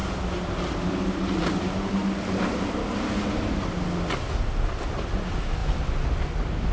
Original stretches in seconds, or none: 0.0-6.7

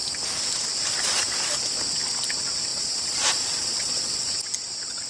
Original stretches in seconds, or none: 0.0-2.7; 4.3-5.1

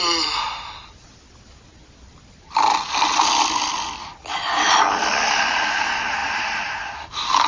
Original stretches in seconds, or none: 0.0-7.5

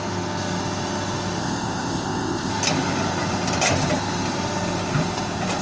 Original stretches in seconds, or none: 0.0-1.4; 2.5-5.6

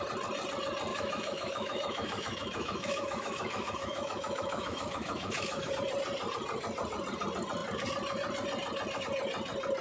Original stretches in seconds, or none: 0.0-0.9; 5.7-9.8